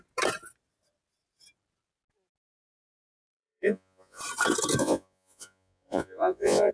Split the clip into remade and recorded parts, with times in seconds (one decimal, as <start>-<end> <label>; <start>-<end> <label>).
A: 0.0-3.2 recorded; 3.2-4.2 remade; 4.2-4.8 recorded; 4.8-6.7 remade